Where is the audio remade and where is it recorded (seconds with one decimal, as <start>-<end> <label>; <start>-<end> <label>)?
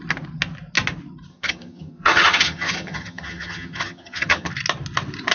0.0-1.3 recorded; 1.3-4.5 remade; 4.5-5.3 recorded